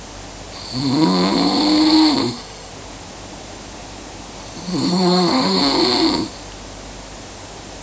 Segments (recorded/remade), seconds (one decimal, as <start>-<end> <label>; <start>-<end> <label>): 0.0-2.2 recorded; 2.2-2.7 remade; 2.7-4.7 recorded; 4.7-5.6 remade; 5.6-7.8 recorded